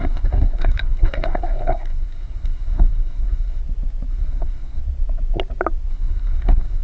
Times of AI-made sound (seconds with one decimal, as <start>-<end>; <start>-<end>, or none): 0.0-3.6; 4.1-4.8; 5.9-6.8